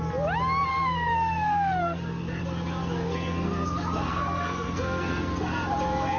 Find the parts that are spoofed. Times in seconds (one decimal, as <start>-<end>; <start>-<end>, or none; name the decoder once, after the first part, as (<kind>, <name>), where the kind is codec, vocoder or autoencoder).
0.7-2.4 (codec, SNAC); 2.8-5.5